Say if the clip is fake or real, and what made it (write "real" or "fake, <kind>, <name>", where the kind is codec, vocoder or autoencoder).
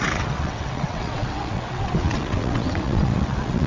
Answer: fake, vocoder, WaveNeXt